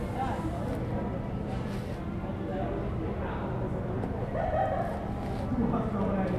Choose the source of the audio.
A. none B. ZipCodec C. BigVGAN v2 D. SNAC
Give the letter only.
A